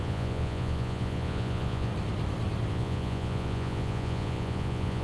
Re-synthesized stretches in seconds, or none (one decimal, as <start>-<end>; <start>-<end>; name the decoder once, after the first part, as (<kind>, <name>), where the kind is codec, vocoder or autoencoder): 0.0-1.9 (vocoder, Vocos); 2.7-5.0

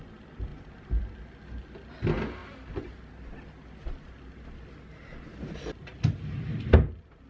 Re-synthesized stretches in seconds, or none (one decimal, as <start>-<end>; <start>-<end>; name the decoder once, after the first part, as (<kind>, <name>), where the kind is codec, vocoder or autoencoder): none

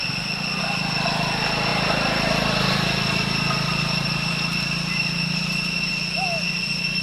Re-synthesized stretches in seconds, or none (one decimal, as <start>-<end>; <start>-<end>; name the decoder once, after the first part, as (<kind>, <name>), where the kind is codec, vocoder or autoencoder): 1.7-5.9 (vocoder, BigVGAN v2)

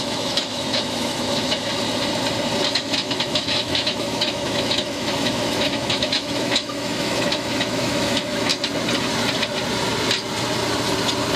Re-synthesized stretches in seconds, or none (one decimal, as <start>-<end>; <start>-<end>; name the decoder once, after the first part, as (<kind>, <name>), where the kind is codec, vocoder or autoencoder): 0.0-1.7 (autoencoder, DAC-VAE); 2.7-8.5